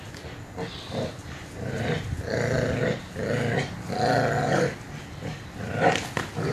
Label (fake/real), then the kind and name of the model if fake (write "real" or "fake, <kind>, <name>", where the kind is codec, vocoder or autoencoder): real